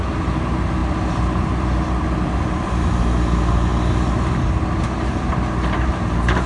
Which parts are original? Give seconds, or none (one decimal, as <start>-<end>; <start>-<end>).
0.0-0.8; 2.8-6.5